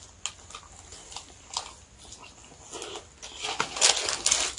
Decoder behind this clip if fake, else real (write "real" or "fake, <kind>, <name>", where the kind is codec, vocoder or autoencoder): real